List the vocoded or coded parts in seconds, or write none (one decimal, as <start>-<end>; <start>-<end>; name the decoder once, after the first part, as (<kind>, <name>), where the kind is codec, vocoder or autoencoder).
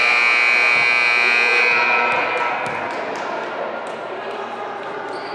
none